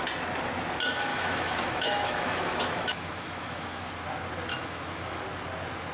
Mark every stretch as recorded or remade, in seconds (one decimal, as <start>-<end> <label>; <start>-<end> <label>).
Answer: 0.0-1.1 recorded; 1.1-3.9 remade; 3.9-4.5 recorded; 4.5-5.2 remade; 5.2-5.9 recorded